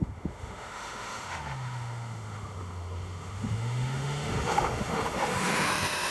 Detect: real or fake fake